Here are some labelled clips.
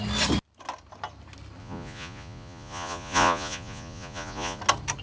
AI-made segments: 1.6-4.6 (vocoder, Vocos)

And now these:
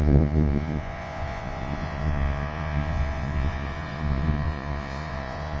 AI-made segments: 0.0-5.6 (vocoder, Vocos)

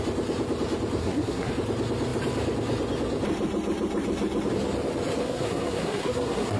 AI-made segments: 1.0-1.5 (codec, SNAC); 5.2-6.6

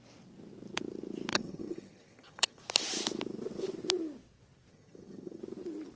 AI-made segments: 1.3-2.6 (vocoder, HiFi-GAN); 4.7-5.4

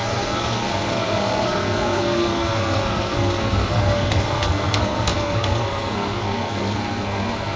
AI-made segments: 0.0-7.6 (codec, SNAC)

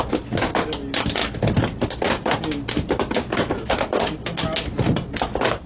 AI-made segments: none